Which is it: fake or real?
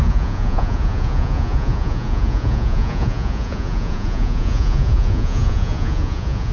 fake